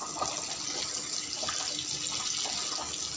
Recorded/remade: recorded